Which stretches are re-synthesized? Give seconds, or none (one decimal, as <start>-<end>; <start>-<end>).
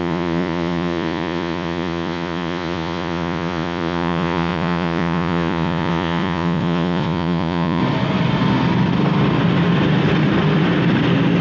0.0-7.8